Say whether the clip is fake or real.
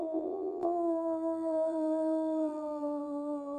fake